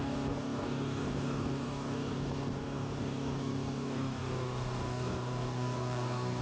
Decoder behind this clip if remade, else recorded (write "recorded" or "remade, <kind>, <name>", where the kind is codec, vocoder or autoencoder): remade, codec, DAC